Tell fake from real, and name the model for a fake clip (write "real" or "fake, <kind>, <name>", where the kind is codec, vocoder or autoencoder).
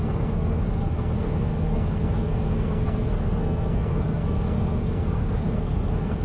fake, codec, SNAC